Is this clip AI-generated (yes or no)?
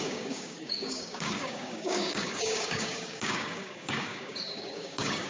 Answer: yes